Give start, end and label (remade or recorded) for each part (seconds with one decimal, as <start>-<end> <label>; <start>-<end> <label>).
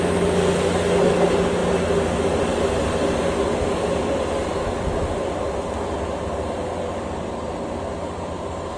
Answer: 0.0-8.8 recorded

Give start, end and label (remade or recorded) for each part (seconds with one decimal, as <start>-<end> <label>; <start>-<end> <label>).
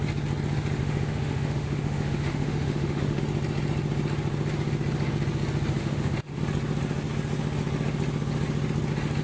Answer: 0.0-0.8 recorded; 0.8-3.2 remade; 3.2-5.8 recorded; 5.8-6.4 remade; 6.4-9.2 recorded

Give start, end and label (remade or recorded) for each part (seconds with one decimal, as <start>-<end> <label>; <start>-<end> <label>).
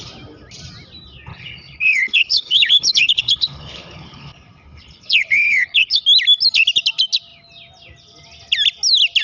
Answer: 0.0-1.3 recorded; 1.3-6.0 remade; 6.0-9.2 recorded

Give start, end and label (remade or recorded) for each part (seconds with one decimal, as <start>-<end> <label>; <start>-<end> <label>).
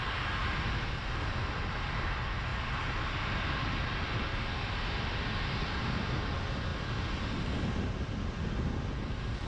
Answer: 0.0-9.5 recorded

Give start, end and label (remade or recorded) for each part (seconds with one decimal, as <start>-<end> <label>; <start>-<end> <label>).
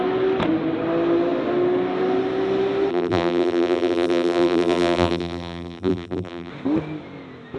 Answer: 0.0-2.9 recorded; 2.9-6.5 remade; 6.5-7.6 recorded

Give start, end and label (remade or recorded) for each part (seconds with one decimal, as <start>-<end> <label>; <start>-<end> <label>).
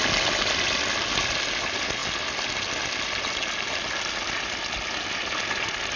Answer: 0.0-6.0 recorded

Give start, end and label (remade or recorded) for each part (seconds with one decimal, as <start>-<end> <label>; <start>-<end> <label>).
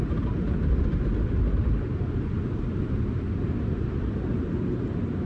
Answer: 0.0-5.3 recorded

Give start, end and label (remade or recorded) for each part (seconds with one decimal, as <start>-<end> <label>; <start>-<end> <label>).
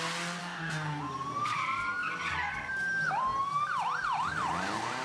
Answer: 0.0-0.4 recorded; 0.4-1.0 remade; 1.0-5.0 recorded